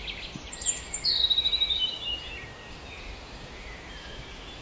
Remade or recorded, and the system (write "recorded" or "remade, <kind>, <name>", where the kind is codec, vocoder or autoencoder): recorded